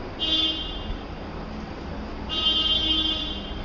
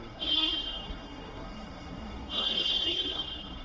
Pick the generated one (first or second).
second